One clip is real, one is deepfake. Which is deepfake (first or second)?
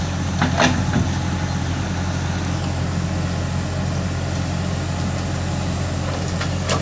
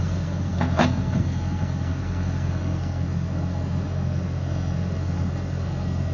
second